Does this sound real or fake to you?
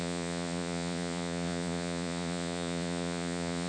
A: fake